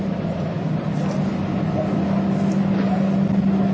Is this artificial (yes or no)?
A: no